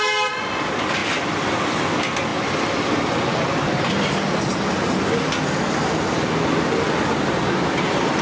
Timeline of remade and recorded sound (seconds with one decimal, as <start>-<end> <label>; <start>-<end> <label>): 0.0-8.2 recorded